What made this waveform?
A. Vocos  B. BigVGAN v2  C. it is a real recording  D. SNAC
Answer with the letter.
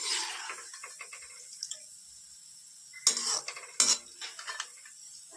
C